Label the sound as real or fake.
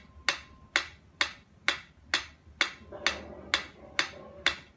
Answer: real